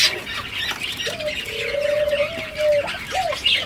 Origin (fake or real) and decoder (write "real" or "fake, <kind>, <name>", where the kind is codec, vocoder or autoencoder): real